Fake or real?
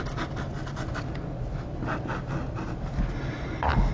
real